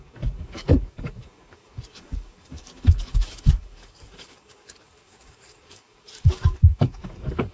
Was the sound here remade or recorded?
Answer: remade